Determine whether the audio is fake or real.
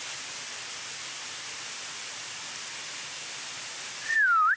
real